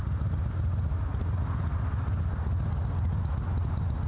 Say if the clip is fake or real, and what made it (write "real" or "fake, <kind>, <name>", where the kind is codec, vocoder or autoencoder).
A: real